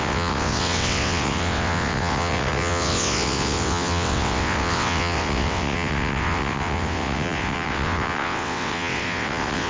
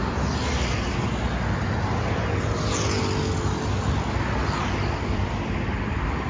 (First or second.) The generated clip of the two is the first